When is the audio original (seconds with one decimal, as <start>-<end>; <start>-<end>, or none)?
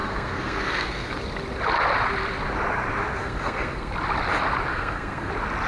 1.2-3.2; 3.9-4.7; 5.3-5.7